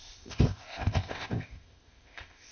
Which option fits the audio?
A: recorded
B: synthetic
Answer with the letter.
B